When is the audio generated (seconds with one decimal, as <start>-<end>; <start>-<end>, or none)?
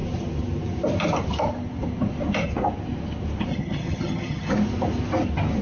3.5-4.5